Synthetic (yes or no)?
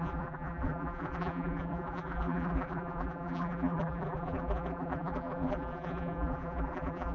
yes